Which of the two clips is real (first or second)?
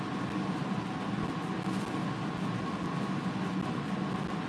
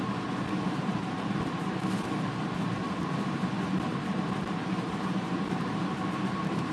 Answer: first